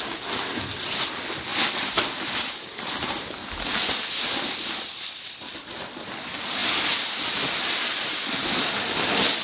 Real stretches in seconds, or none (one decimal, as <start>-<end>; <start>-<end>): 0.0-1.5; 3.6-9.4